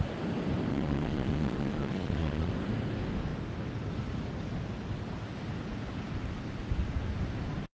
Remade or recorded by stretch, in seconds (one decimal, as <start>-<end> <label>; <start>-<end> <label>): 0.0-0.7 recorded; 0.7-2.5 remade; 2.5-7.7 recorded